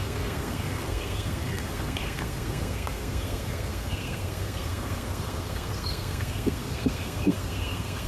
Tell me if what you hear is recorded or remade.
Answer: remade